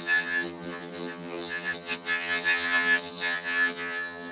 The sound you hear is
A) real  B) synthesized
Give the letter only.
B